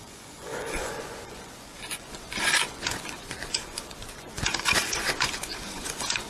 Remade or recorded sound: remade